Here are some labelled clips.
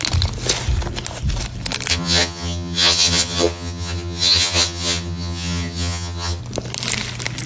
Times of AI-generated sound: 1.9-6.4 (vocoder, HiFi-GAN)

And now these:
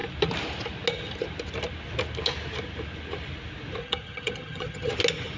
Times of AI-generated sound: 3.8-4.9 (vocoder, HiFi-GAN)

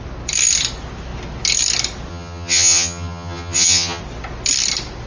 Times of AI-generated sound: 2.1-4.0 (vocoder, HiFi-GAN)

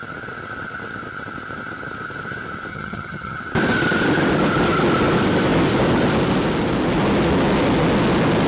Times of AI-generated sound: 2.7-3.4 (vocoder, HiFi-GAN)

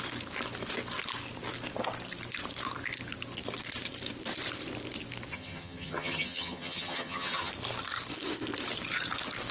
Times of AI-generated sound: 5.3-7.5 (vocoder, HiFi-GAN)

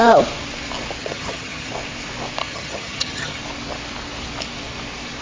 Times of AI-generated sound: 1.0-1.7 (vocoder, HiFi-GAN); 2.4-3.4

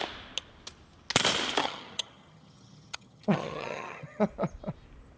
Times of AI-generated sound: 1.6-4.3 (vocoder, HiFi-GAN)